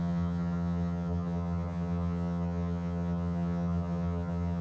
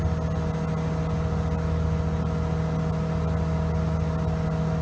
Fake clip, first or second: first